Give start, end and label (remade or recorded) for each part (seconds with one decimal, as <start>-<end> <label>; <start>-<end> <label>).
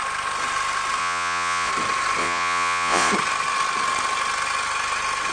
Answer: 0.0-1.0 recorded; 1.0-1.7 remade; 1.7-2.2 recorded; 2.2-3.1 remade; 3.1-5.3 recorded